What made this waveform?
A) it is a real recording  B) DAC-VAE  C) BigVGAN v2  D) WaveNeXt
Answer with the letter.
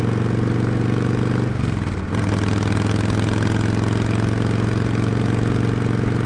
A